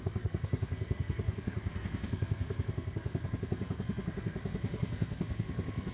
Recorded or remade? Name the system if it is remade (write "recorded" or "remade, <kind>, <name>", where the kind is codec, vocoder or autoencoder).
remade, codec, SNAC